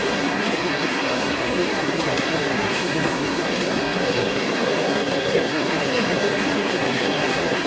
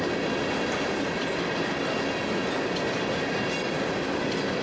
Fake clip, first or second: first